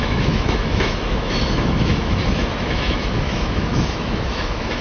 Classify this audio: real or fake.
fake